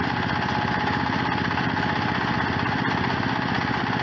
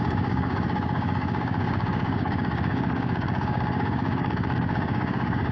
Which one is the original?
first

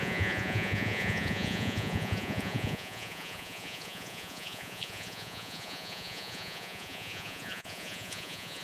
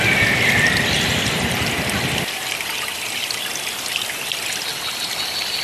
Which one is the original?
second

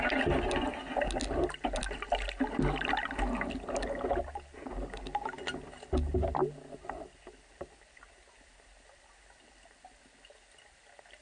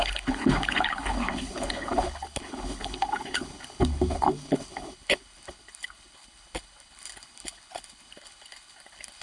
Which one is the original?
first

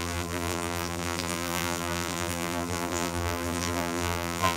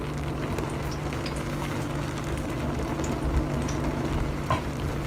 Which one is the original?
second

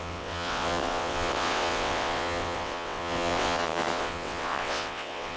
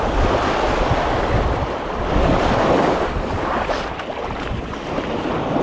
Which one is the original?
second